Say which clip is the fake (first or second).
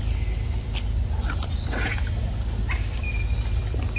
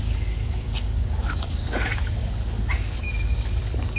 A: second